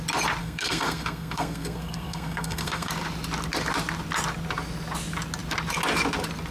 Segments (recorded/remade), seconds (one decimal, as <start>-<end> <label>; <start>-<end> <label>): 0.0-0.4 recorded; 0.4-2.9 remade; 2.9-6.5 recorded